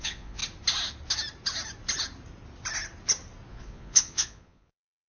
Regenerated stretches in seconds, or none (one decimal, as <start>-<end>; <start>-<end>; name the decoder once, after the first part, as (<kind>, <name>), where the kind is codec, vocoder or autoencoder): 0.0-0.4 (vocoder, Vocos); 3.5-5.1